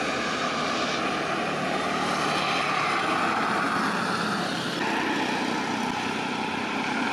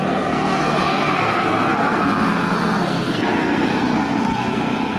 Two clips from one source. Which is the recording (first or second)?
first